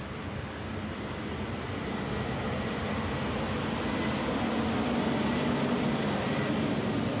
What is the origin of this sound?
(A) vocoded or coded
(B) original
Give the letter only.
B